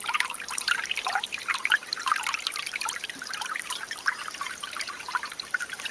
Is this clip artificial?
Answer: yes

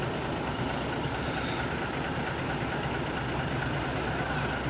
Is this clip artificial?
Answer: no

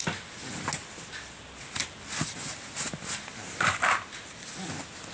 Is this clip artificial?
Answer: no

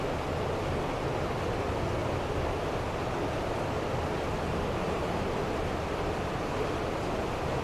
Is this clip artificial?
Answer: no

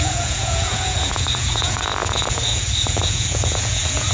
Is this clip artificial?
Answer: yes